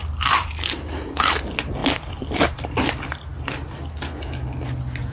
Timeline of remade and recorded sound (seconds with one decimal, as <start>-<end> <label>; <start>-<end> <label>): 0.0-0.7 remade; 0.7-1.8 recorded; 1.8-2.9 remade; 2.9-5.1 recorded